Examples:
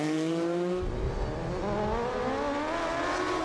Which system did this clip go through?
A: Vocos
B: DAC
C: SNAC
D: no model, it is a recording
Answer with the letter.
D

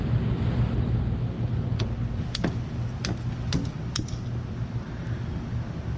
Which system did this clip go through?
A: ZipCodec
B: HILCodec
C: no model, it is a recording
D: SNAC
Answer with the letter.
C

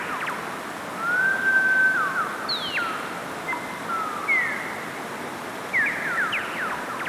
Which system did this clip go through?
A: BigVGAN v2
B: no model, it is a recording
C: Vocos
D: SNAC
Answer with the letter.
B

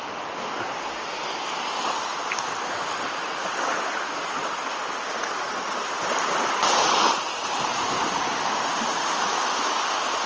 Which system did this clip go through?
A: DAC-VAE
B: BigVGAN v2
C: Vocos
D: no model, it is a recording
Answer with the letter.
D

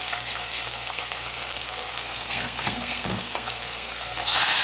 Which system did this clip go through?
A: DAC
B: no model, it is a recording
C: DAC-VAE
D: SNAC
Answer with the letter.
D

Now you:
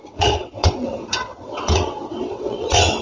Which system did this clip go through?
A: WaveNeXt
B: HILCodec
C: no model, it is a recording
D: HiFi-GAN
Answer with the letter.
A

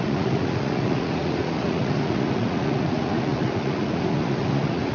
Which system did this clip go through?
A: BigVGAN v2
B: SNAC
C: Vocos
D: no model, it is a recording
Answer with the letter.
C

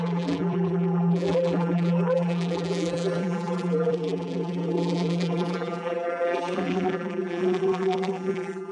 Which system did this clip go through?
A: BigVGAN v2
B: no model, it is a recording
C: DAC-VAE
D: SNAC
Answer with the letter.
A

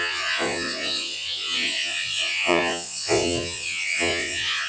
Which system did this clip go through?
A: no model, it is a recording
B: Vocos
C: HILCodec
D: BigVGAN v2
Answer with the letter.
B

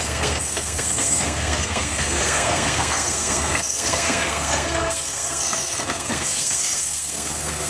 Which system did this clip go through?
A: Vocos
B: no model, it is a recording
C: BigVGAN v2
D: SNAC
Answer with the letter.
D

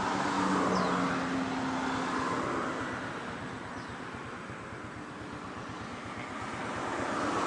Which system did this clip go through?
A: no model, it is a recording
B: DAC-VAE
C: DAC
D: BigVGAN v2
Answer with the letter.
A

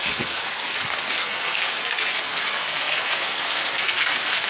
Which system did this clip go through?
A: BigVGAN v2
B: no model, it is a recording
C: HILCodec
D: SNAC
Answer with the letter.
D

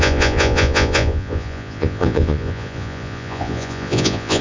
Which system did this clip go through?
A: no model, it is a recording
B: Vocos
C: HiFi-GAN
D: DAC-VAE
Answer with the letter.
B